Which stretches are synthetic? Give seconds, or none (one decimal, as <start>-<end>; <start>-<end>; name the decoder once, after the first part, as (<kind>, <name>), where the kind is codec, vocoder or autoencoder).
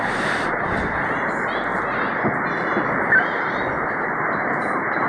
none